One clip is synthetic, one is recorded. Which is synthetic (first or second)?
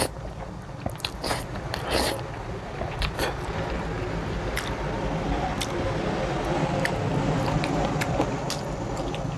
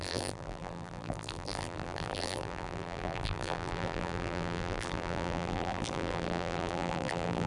second